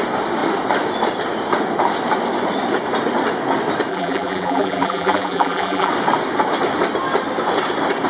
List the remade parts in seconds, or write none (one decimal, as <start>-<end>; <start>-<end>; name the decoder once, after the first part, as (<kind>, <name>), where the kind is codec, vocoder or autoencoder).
3.9-5.9 (vocoder, BigVGAN v2)